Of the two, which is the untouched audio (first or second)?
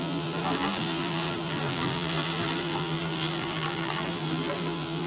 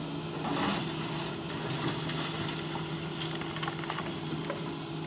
second